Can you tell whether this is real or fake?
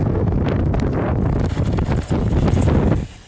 real